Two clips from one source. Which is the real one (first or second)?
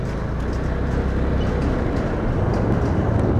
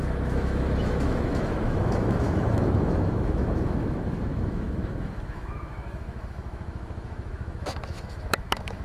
first